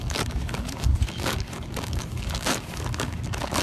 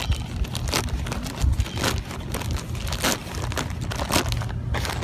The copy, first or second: first